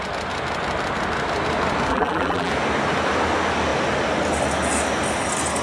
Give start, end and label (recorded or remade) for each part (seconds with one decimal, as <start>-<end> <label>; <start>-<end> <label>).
0.0-1.9 recorded; 1.9-2.5 remade; 2.5-5.6 recorded